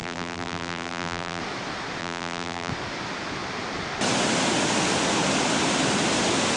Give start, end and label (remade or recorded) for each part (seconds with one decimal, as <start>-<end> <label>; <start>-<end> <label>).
0.0-1.4 remade; 1.4-2.0 recorded; 2.0-2.7 remade; 2.7-6.6 recorded